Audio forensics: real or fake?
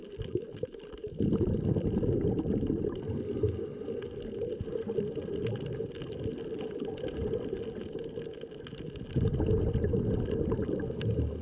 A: real